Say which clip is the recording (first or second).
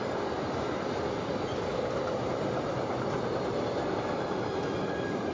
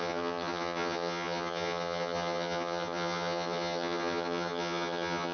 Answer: first